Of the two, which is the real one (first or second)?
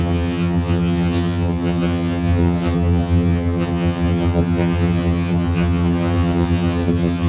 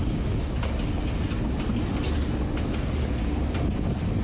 second